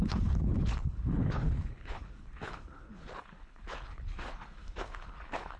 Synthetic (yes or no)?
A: yes